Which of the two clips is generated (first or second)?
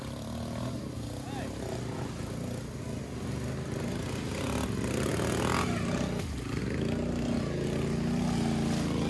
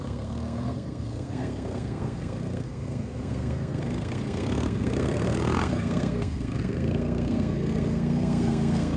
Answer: second